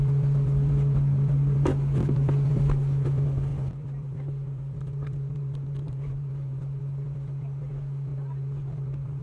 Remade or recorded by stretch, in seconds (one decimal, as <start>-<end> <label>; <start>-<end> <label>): 0.0-3.5 recorded; 3.5-6.8 remade; 6.8-8.1 recorded; 8.1-9.2 remade